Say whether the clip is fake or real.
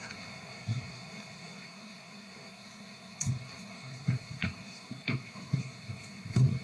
fake